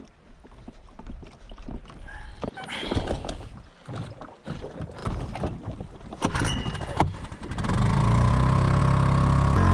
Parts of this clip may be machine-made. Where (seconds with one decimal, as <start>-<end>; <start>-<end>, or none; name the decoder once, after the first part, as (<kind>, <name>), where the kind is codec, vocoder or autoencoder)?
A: none